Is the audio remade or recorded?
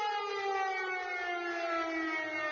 recorded